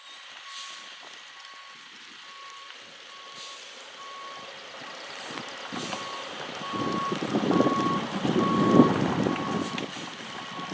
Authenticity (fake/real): real